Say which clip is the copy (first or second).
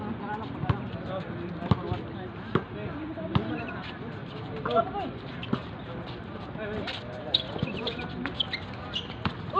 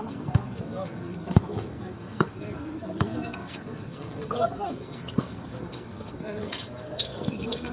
second